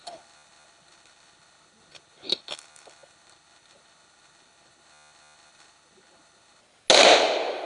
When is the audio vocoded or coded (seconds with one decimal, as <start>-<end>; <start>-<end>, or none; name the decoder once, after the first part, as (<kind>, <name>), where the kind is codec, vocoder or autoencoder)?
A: 0.0-6.6 (codec, HILCodec)